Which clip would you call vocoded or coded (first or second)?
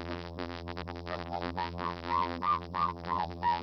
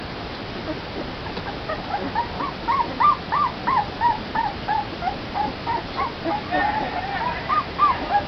first